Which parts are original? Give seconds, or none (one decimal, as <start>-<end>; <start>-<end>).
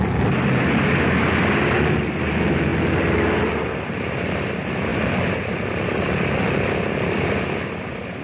0.0-8.2